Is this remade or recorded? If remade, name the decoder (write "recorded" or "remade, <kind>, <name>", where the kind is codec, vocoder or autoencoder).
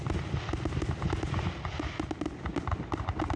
recorded